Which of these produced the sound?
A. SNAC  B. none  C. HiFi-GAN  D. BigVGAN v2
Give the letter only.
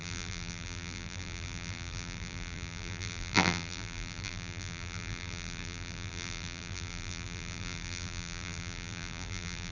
D